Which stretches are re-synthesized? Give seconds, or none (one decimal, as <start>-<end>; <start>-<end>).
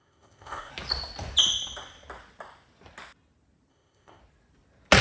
0.0-0.7; 3.7-4.2